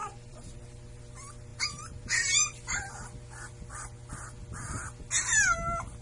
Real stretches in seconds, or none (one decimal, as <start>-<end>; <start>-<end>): 0.6-1.5; 2.9-6.0